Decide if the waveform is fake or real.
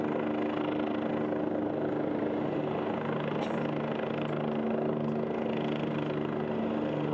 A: real